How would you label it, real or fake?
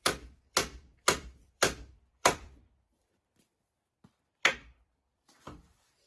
fake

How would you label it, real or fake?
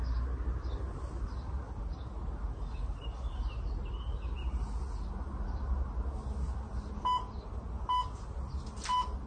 real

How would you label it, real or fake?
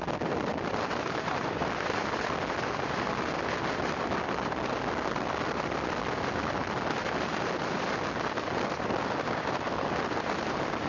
real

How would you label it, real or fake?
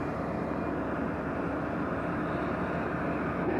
real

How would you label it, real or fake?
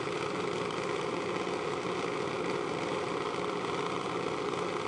real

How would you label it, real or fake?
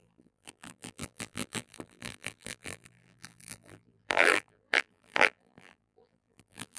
fake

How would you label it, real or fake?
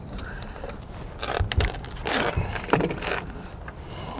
fake